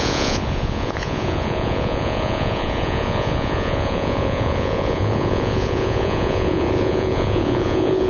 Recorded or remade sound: remade